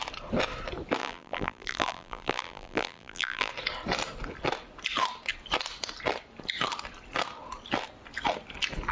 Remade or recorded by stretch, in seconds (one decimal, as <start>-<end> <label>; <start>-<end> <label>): 0.0-1.0 recorded; 1.0-3.5 remade; 3.5-8.9 recorded